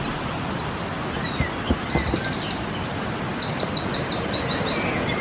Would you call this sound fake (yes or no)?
no